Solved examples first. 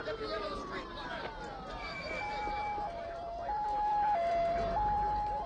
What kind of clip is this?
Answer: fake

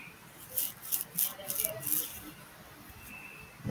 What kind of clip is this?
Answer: real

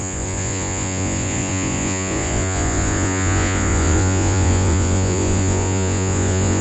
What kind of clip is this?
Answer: fake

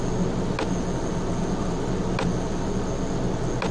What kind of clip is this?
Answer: real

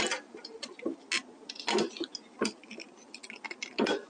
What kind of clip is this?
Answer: real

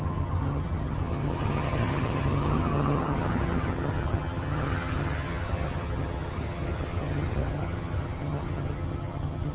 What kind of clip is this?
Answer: fake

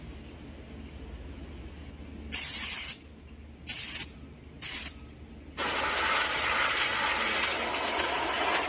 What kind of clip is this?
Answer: real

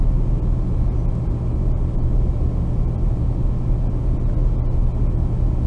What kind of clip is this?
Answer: real